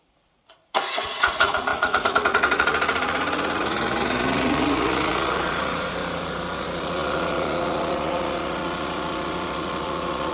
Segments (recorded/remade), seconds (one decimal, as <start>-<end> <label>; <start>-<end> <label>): 0.0-10.3 remade